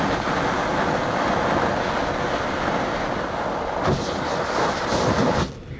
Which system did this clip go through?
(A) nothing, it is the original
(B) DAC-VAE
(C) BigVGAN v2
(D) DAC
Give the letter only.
A